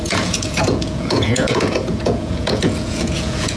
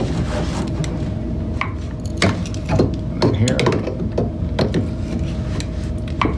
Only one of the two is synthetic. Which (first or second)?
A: first